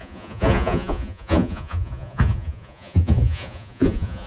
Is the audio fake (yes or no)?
yes